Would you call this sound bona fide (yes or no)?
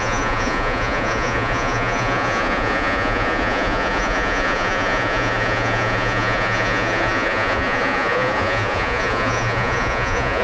no